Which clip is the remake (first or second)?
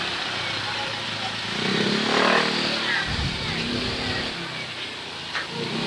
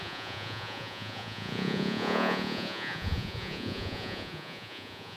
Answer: second